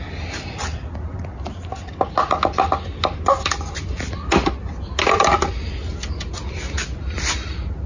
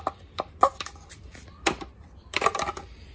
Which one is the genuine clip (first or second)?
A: first